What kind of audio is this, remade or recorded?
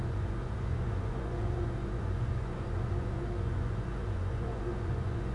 remade